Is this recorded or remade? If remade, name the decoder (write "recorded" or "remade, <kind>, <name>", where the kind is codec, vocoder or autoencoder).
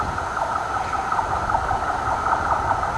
recorded